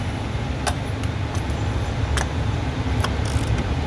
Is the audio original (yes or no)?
yes